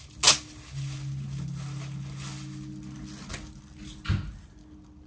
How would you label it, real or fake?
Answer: real